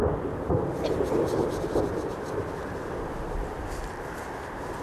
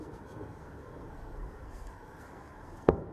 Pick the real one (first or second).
first